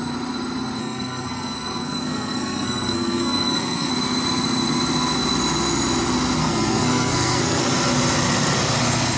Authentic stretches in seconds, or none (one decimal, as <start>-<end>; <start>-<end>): 0.0-0.8; 3.9-6.4; 7.6-9.2